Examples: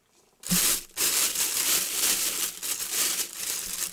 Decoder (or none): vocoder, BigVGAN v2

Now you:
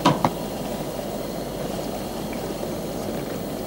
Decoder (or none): none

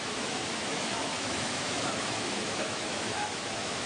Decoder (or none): autoencoder, DAC-VAE